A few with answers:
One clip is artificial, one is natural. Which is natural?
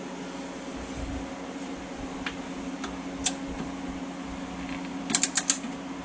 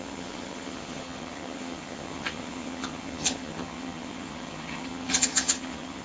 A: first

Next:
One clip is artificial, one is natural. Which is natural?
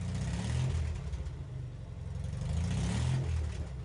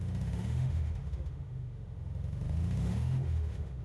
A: first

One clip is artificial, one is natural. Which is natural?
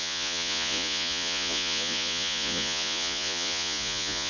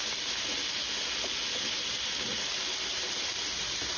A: second